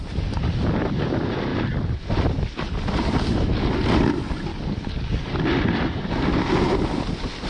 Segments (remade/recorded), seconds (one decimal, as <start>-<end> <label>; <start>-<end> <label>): 0.0-4.5 recorded; 4.5-5.3 remade; 5.3-7.5 recorded

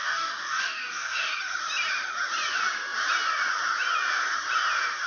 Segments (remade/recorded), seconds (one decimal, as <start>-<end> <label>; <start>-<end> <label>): 0.0-1.4 remade; 1.4-5.1 recorded